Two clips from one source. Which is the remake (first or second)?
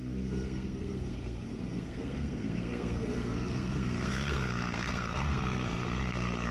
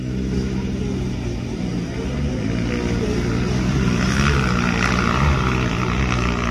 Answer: first